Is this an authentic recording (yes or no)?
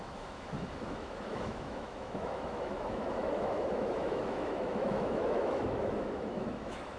no